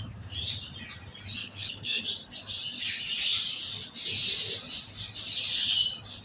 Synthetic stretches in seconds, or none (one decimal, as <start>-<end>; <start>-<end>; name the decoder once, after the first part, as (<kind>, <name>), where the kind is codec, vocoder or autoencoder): 1.4-2.0 (codec, HILCodec)